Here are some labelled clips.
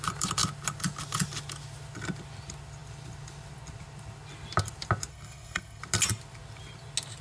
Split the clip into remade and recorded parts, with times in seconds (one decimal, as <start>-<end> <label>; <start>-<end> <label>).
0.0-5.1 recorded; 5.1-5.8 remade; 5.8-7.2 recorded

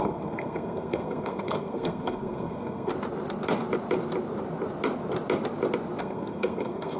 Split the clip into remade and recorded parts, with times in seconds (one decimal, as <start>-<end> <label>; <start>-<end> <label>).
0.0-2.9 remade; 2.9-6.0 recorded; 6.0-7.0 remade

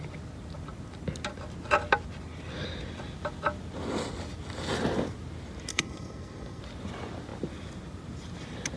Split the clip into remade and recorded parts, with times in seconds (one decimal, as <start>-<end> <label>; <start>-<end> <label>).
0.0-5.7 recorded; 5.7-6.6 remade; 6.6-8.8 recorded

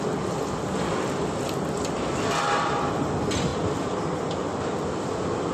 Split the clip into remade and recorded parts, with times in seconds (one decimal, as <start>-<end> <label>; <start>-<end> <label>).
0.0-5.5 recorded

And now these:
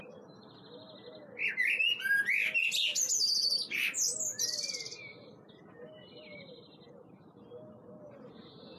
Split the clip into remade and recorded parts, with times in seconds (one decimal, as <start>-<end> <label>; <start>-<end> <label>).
0.0-8.8 recorded